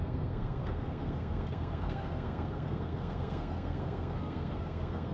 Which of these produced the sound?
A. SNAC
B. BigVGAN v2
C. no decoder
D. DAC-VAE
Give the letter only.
A